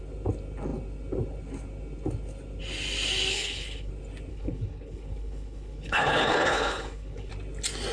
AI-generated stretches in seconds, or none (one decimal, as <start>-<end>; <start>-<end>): 3.3-3.9; 4.3-7.3

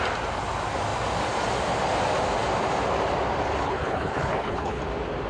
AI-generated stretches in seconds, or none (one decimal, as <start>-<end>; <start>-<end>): 3.6-4.8